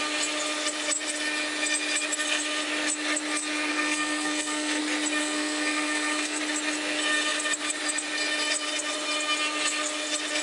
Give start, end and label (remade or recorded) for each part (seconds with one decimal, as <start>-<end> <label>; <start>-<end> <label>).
0.0-3.7 recorded; 3.7-4.8 remade; 4.8-5.2 recorded; 5.2-6.4 remade; 6.4-10.4 recorded